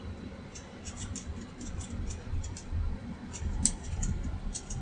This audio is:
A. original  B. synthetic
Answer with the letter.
A